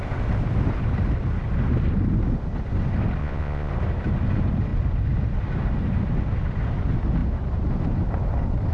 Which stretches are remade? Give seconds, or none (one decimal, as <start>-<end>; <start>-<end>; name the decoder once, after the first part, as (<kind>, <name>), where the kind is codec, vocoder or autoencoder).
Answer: 3.2-3.7 (vocoder, Vocos)